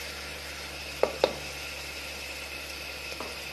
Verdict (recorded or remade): recorded